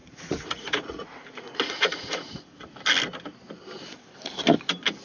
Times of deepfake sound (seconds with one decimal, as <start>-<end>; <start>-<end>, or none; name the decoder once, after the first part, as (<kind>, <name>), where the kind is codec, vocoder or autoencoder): 0.0-2.6 (vocoder, Vocos)

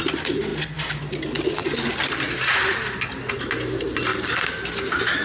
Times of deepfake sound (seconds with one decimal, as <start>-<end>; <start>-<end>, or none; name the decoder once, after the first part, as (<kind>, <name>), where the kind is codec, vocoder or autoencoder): none

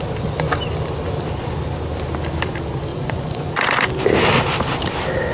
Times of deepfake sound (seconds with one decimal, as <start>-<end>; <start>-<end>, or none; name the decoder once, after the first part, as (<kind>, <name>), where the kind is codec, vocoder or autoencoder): 2.9-3.5 (vocoder, Vocos)